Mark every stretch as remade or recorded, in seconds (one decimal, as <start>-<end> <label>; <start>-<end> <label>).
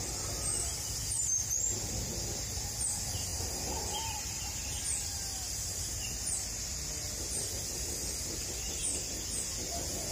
0.0-10.1 recorded